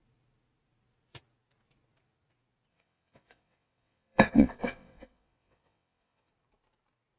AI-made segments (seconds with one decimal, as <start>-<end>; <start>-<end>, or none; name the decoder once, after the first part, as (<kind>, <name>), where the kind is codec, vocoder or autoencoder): 2.7-6.3 (vocoder, WaveNeXt)